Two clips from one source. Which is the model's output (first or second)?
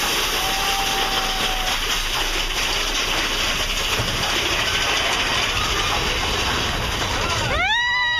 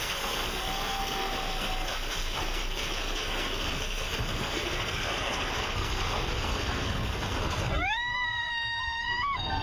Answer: second